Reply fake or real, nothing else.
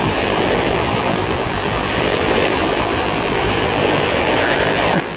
fake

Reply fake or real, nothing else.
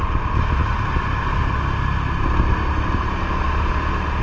real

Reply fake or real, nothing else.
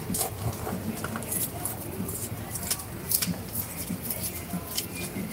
fake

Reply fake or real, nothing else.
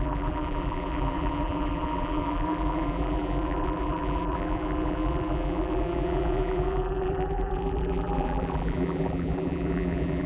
fake